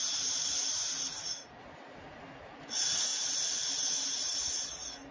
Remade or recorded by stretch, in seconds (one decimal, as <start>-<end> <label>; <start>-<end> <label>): 0.0-2.1 remade; 2.1-3.1 recorded; 3.1-4.6 remade; 4.6-5.1 recorded